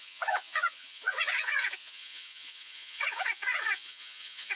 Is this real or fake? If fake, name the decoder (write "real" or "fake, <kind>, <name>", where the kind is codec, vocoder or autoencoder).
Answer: fake, vocoder, Vocos